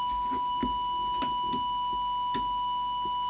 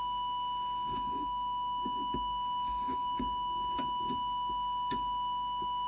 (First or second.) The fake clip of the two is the second